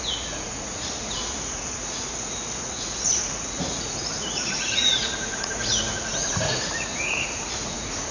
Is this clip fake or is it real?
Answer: fake